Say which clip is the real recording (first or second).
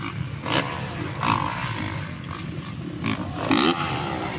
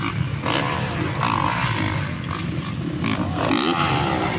second